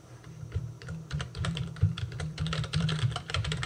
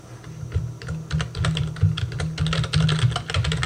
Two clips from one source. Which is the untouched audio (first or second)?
second